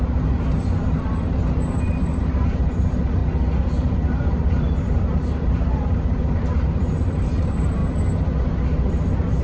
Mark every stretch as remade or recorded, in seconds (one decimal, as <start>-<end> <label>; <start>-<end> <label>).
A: 0.0-3.2 remade; 3.2-4.1 recorded; 4.1-7.8 remade; 7.8-8.9 recorded; 8.9-9.4 remade